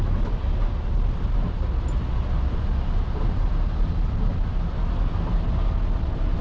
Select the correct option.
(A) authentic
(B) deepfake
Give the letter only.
A